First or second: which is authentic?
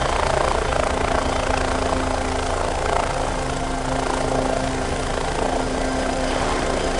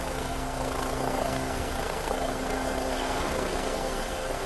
first